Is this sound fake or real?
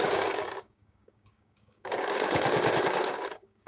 fake